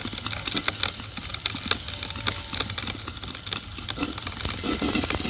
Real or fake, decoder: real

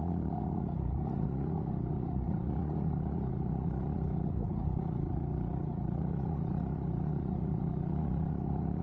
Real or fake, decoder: fake, vocoder, Vocos